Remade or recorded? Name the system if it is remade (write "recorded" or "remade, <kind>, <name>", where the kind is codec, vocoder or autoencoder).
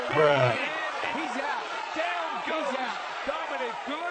remade, vocoder, Vocos